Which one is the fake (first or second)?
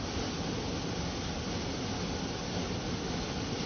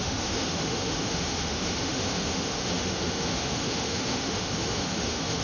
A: second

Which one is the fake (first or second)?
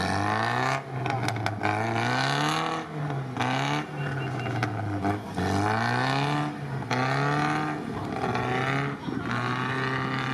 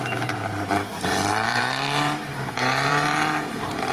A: second